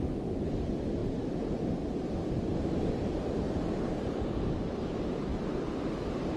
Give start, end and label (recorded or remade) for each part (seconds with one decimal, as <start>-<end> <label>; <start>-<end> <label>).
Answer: 0.0-6.4 recorded